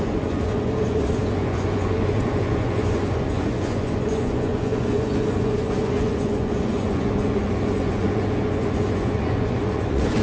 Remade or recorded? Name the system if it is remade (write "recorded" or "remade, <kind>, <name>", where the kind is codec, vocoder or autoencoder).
remade, vocoder, Vocos